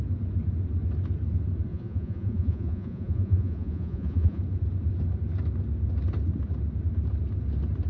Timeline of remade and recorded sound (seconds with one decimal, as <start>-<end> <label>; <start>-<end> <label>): 0.0-1.7 recorded; 1.7-4.4 remade; 4.4-7.9 recorded